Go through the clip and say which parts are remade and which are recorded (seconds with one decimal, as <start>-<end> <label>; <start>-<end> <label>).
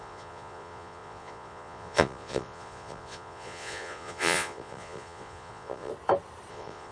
0.0-5.9 remade; 5.9-6.5 recorded; 6.5-6.9 remade